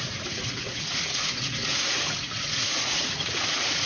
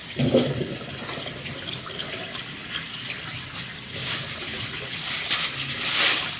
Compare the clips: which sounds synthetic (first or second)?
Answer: first